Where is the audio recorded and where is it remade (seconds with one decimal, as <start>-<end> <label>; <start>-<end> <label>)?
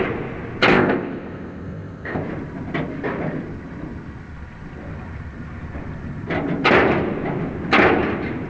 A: 0.0-0.7 recorded; 0.7-2.2 remade; 2.2-8.5 recorded